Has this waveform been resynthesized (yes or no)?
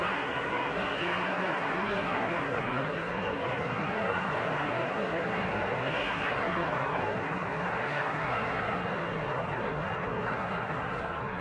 yes